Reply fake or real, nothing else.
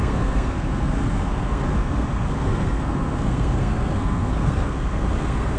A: fake